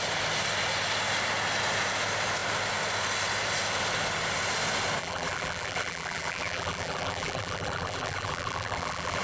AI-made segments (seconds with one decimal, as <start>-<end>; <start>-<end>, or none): 5.0-9.2